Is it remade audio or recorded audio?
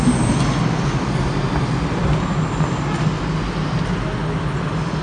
recorded